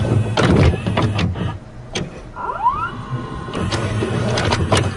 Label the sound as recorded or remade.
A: remade